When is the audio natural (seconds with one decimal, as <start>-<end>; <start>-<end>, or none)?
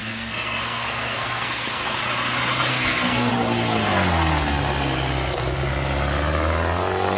2.0-2.7; 3.3-7.2